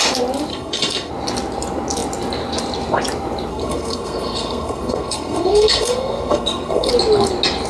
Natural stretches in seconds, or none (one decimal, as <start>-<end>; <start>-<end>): 0.0-0.5; 1.1-3.5; 6.9-7.7